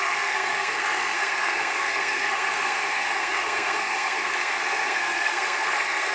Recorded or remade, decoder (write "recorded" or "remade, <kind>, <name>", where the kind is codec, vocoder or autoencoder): remade, codec, SNAC